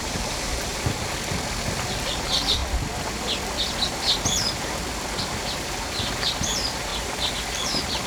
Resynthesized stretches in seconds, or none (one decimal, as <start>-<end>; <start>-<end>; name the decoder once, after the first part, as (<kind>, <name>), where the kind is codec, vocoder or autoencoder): 0.0-0.7 (vocoder, BigVGAN v2); 1.5-2.6; 5.2-6.9; 7.5-8.1